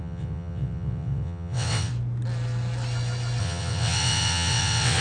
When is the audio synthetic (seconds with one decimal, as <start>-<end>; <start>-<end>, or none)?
0.0-1.9; 3.4-5.0